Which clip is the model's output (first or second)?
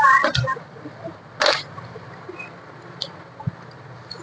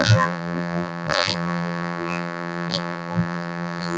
second